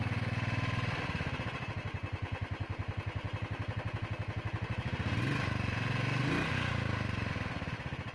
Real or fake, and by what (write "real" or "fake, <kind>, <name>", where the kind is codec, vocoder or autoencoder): real